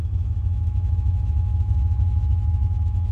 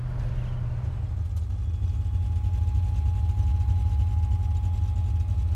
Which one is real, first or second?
second